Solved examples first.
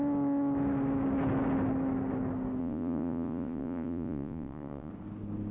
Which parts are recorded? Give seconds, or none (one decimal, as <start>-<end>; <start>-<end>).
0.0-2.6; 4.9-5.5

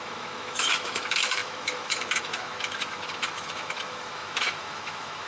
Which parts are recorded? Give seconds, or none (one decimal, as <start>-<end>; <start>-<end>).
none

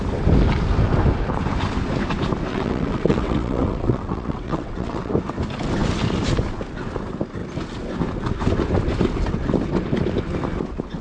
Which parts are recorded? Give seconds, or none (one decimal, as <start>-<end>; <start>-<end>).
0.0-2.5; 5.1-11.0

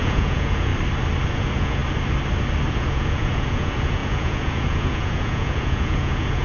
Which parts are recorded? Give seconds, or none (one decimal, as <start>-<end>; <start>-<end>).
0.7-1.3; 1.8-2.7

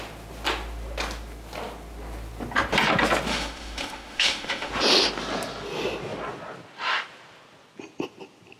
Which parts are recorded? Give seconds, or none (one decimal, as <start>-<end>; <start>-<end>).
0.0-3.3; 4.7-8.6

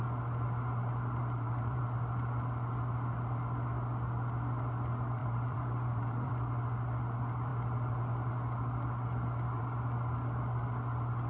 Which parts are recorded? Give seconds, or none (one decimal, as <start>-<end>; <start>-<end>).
0.0-1.2; 1.8-5.2; 6.3-11.3

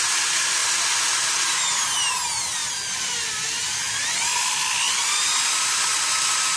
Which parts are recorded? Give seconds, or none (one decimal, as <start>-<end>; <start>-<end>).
0.0-6.6